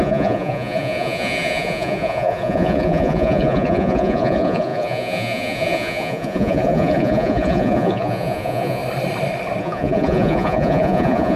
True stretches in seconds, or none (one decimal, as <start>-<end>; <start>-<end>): 8.8-9.6